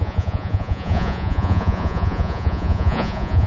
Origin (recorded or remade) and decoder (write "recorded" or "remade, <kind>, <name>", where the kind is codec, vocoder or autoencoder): remade, vocoder, Vocos